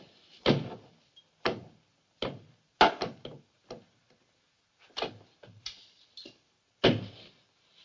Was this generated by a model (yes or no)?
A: no